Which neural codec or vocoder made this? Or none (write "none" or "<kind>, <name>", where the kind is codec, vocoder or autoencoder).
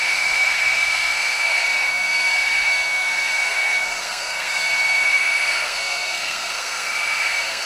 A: codec, SNAC